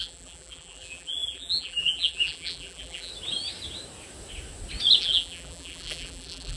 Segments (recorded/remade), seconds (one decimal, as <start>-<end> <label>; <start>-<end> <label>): 0.0-3.1 remade; 3.1-5.0 recorded; 5.0-6.6 remade